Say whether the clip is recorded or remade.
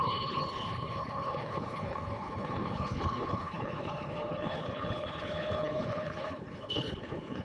remade